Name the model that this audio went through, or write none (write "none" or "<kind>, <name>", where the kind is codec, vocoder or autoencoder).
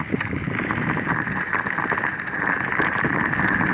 none